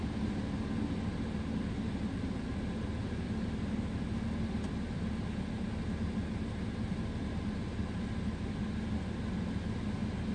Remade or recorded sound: recorded